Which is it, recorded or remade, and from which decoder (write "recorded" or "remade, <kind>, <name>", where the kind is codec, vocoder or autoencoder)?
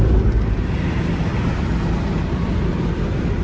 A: remade, vocoder, BigVGAN v2